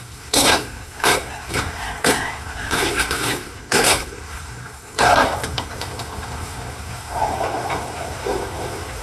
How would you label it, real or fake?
fake